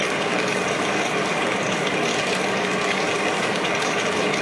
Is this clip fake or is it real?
fake